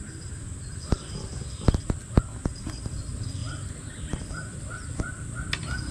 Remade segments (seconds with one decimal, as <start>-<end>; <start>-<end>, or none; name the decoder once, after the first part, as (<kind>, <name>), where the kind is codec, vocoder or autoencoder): none